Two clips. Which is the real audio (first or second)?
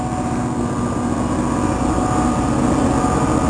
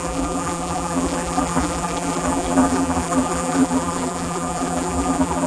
first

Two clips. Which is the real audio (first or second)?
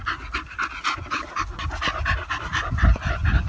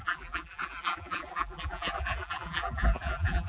first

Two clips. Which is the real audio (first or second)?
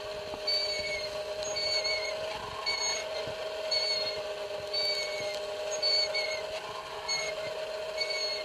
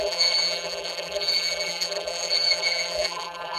first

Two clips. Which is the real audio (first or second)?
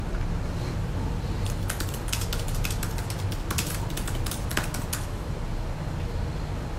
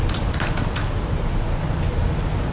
first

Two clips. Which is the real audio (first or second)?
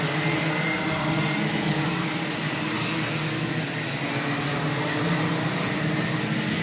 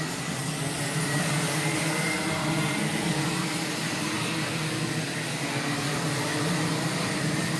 first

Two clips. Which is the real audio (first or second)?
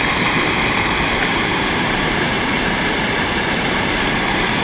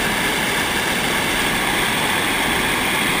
second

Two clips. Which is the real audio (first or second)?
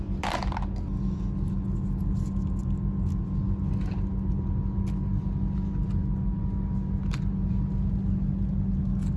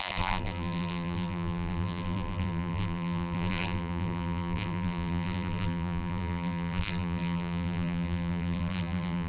first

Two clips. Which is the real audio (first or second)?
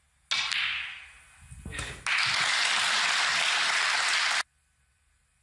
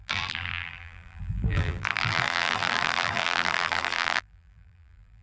first